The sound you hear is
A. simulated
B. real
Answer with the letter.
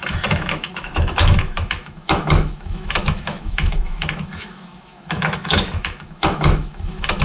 A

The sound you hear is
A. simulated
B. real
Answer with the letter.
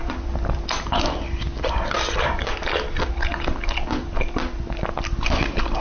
B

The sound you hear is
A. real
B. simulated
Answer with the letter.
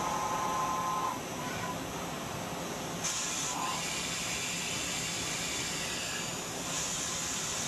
A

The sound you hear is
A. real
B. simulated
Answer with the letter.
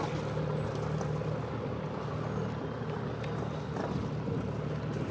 A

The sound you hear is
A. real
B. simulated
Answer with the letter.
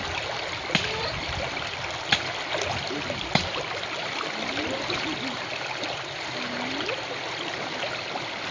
A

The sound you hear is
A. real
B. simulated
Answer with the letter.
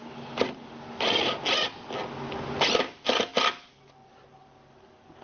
A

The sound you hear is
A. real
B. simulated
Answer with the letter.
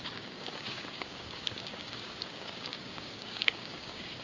B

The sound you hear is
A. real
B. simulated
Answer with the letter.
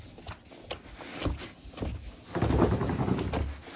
A